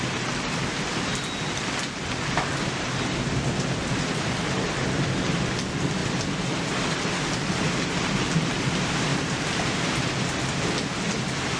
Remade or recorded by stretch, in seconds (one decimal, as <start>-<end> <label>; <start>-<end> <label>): 0.0-6.0 recorded; 6.0-6.6 remade; 6.6-9.1 recorded; 9.1-10.2 remade; 10.2-11.6 recorded